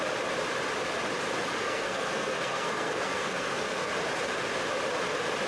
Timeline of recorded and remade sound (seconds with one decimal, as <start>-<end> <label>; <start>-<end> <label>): 0.0-1.6 recorded; 1.6-3.9 remade; 3.9-5.5 recorded